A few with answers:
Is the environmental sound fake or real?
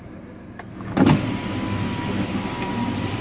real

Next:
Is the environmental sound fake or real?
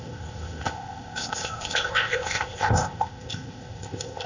fake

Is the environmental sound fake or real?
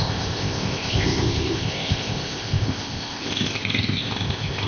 fake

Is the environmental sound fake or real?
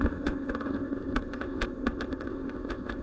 fake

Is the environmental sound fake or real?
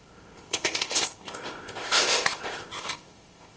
fake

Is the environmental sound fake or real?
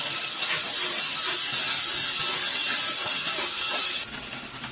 real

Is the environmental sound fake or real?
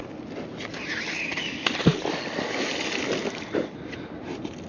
real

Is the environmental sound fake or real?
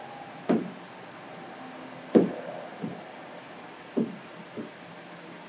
real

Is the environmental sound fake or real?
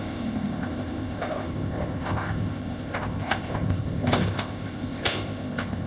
fake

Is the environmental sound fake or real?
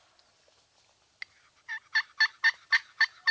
real